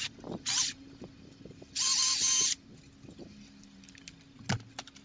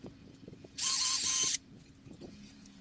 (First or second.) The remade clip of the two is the second